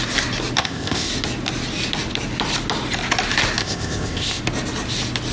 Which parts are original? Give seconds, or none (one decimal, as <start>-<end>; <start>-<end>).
0.0-0.6; 1.1-3.6; 4.4-5.3